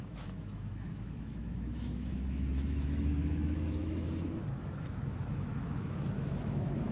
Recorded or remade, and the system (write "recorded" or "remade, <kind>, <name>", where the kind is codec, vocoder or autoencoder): remade, autoencoder, DAC-VAE